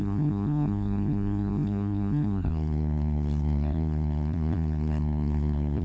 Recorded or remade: remade